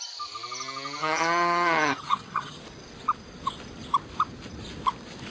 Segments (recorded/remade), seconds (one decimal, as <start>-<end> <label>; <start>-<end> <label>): 0.0-1.0 recorded; 1.0-2.6 remade; 2.6-5.3 recorded